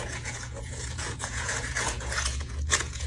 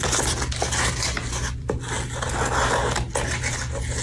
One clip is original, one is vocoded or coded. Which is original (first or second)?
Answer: second